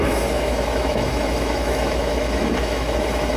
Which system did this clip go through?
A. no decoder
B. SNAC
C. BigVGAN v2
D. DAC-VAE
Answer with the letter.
D